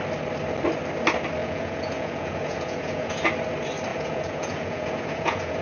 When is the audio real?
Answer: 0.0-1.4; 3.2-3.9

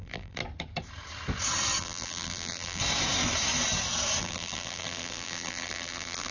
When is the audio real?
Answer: 0.4-1.8; 2.8-4.2

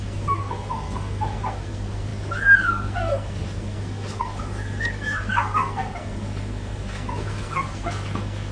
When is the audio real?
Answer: none

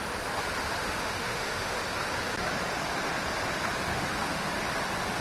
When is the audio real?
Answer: 0.0-0.8; 1.8-3.9; 4.5-5.2

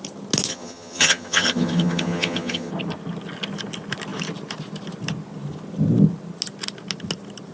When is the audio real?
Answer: 0.0-0.5; 2.7-7.5

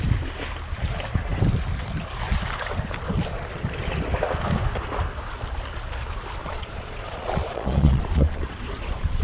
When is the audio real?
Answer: 0.0-6.4

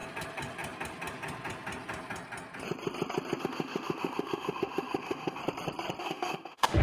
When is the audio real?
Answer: 0.0-3.4; 5.4-6.0